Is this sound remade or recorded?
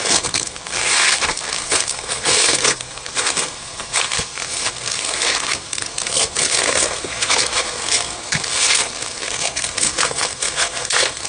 remade